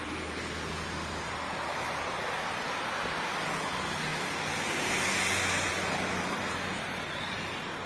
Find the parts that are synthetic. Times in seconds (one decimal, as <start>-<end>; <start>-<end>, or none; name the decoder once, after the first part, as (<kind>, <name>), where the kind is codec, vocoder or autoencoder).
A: none